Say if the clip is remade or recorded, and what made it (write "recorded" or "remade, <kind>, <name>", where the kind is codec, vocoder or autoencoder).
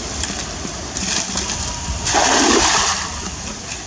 recorded